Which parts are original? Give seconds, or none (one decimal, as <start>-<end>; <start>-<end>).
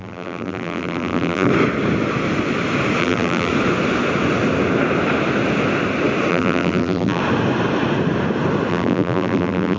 1.5-3.0; 3.5-6.3; 7.2-8.7